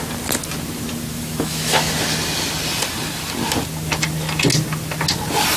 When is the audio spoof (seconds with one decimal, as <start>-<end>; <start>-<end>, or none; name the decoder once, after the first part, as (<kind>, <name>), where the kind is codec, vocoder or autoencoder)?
1.1-1.9 (autoencoder, DAC-VAE)